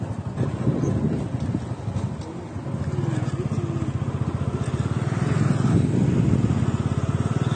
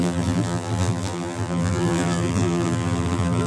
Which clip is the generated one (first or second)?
second